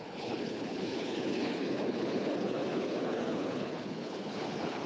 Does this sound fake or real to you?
fake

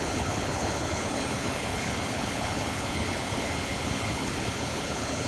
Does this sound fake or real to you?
fake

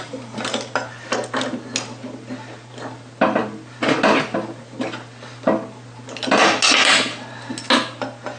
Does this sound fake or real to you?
real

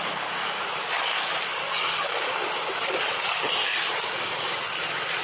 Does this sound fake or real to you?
real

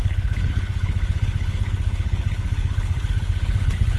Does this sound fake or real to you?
fake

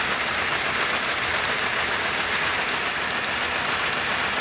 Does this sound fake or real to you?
real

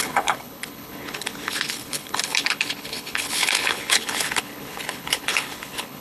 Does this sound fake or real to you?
fake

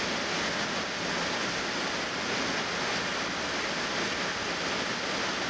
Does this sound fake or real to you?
real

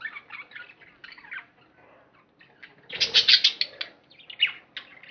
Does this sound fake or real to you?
real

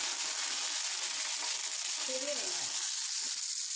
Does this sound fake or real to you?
real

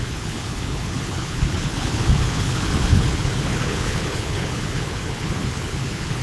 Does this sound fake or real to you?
fake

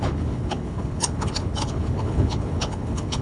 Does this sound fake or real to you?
fake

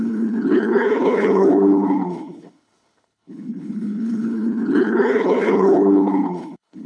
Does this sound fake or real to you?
fake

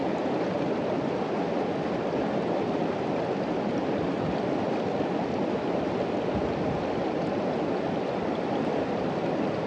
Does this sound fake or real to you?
real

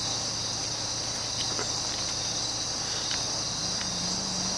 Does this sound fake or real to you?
real